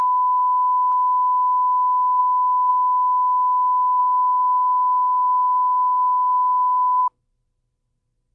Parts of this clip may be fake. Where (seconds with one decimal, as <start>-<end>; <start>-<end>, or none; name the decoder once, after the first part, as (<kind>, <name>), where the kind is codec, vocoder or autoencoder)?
4.0-7.0 (codec, DAC)